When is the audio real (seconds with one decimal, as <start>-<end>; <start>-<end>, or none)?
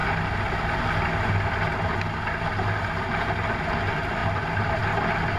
0.0-2.8